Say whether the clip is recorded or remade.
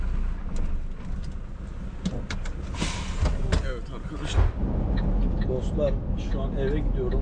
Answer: recorded